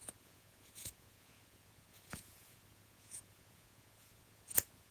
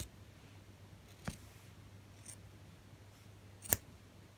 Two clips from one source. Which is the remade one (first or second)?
first